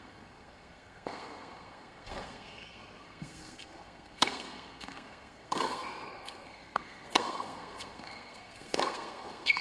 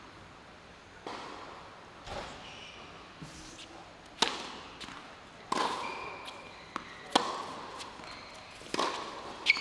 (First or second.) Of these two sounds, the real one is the second